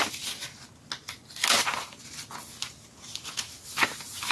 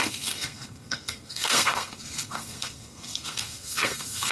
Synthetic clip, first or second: second